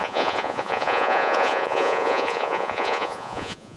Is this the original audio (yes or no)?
no